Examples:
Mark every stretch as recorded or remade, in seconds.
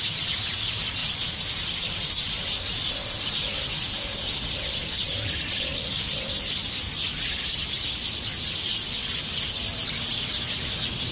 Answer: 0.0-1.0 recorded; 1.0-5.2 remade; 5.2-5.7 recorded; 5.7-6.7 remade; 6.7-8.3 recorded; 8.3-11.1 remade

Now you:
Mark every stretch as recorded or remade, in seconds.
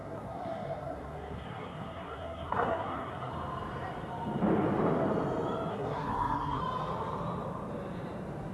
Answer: 0.0-3.3 remade; 3.3-5.7 recorded; 5.7-6.6 remade; 6.6-8.5 recorded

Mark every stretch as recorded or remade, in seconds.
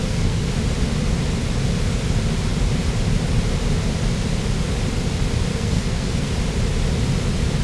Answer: 0.0-0.5 remade; 0.5-5.5 recorded; 5.5-6.3 remade; 6.3-7.6 recorded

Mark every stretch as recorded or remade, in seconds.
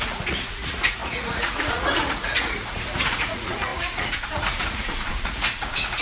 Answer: 0.0-6.0 remade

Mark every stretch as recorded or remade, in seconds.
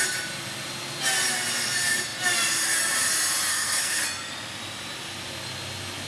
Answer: 0.0-3.5 recorded; 3.5-4.0 remade; 4.0-6.1 recorded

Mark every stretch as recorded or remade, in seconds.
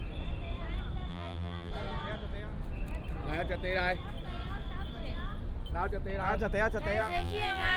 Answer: 0.0-1.1 recorded; 1.1-1.7 remade; 1.7-7.0 recorded; 7.0-7.8 remade